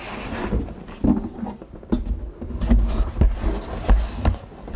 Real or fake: real